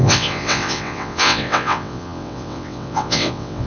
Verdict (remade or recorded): remade